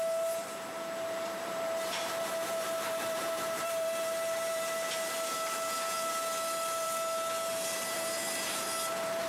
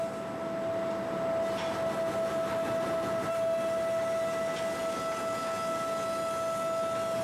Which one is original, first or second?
second